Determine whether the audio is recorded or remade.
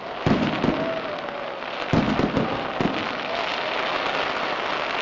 recorded